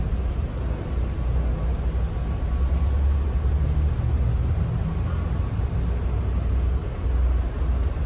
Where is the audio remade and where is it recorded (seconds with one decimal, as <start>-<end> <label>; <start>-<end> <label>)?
0.0-8.1 recorded